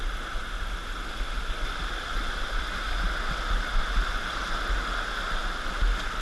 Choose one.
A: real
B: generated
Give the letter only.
A